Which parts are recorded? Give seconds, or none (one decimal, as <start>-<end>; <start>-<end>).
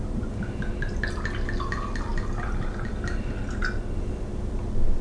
0.0-5.0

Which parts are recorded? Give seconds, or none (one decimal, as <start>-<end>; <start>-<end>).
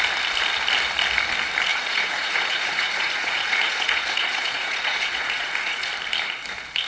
0.0-1.7; 5.8-6.9